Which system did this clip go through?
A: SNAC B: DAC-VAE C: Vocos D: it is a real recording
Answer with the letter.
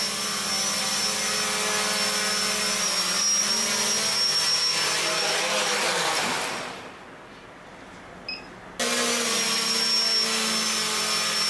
D